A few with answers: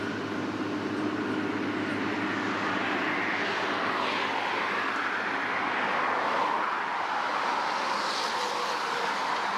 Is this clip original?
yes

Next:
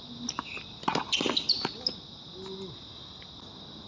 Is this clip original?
yes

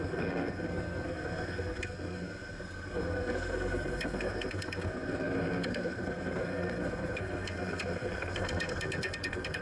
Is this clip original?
no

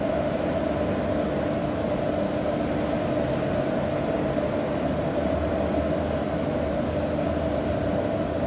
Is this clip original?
yes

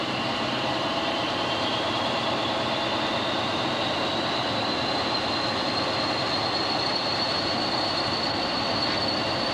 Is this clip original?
yes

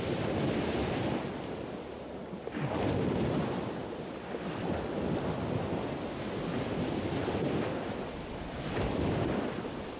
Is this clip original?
yes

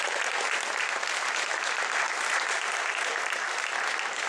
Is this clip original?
yes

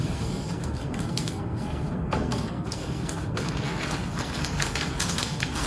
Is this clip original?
no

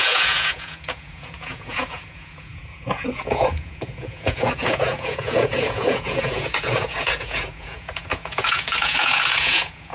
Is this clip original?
no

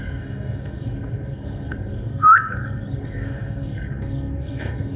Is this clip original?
no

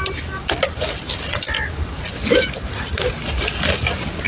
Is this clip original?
yes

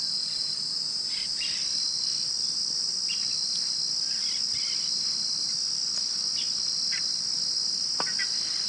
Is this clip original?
yes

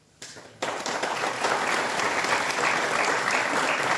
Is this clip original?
yes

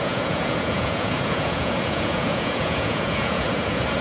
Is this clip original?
no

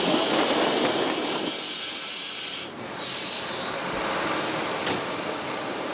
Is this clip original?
yes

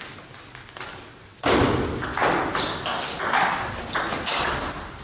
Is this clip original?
yes